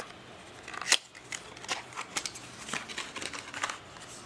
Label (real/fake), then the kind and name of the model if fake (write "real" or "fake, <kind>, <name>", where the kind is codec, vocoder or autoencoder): real